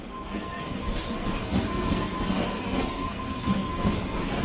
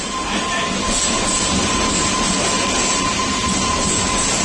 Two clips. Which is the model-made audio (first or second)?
first